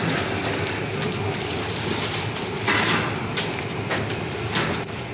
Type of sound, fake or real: real